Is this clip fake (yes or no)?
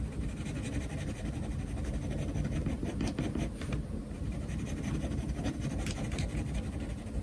yes